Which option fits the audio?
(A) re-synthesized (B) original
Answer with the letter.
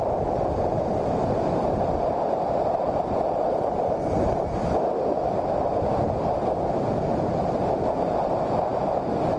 A